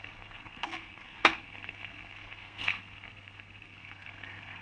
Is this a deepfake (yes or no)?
yes